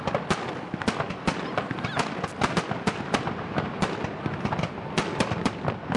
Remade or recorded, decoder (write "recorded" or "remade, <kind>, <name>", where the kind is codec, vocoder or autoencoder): recorded